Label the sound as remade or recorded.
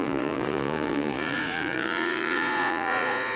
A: remade